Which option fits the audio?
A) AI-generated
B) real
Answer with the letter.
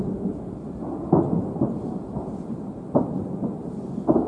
B